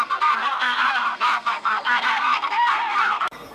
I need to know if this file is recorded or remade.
remade